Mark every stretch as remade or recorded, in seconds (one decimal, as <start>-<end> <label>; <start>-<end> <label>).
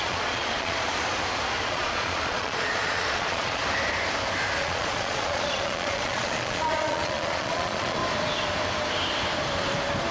0.0-0.9 remade; 0.9-1.6 recorded; 1.6-3.6 remade; 3.6-4.6 recorded; 4.6-8.0 remade; 8.0-10.1 recorded